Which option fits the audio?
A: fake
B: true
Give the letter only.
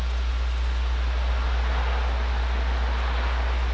B